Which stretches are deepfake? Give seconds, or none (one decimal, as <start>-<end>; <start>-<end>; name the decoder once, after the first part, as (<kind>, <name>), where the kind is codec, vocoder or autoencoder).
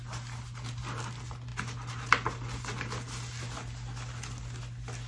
none